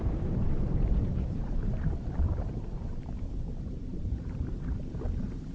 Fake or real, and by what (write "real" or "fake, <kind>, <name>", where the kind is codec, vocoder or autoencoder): fake, vocoder, BigVGAN v2